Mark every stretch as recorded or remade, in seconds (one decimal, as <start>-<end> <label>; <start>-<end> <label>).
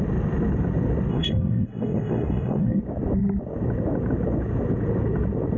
0.0-1.1 recorded; 1.1-2.8 remade; 2.8-5.6 recorded